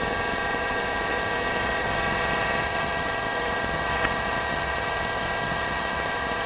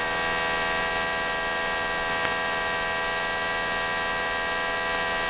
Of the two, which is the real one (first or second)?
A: second